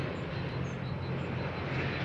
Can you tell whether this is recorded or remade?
recorded